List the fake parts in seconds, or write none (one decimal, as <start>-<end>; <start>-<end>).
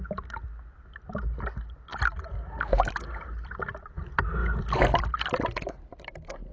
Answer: none